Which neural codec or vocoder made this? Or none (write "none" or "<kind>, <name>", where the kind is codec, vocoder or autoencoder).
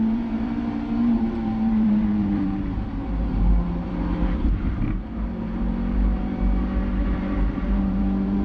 vocoder, BigVGAN v2